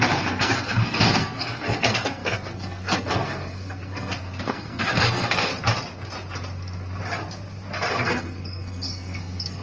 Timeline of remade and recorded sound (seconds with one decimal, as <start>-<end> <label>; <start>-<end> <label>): 0.0-5.5 remade; 5.5-7.9 recorded; 7.9-9.6 remade